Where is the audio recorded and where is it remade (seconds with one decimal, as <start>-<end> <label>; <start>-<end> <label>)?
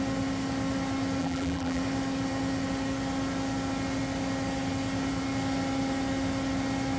0.0-1.2 recorded; 1.2-1.8 remade; 1.8-7.0 recorded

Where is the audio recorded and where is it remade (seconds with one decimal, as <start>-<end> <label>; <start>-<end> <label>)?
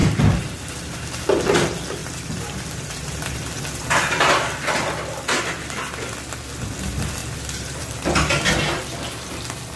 0.0-1.4 remade; 1.4-2.0 recorded; 2.0-3.6 remade; 3.6-7.2 recorded; 7.2-7.8 remade; 7.8-9.8 recorded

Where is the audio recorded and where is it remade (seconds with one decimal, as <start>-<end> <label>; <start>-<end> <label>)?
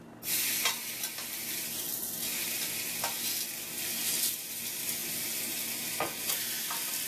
0.0-7.1 recorded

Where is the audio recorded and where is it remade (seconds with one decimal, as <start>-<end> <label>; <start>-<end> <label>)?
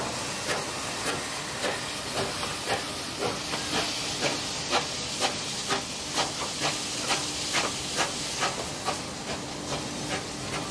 0.0-10.7 recorded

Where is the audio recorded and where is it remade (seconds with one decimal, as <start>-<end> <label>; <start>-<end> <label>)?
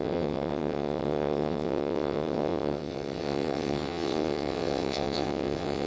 0.0-5.9 remade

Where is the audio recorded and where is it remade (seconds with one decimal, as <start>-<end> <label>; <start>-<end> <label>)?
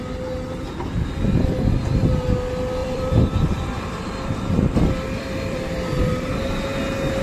0.0-2.8 recorded; 2.8-6.1 remade; 6.1-7.2 recorded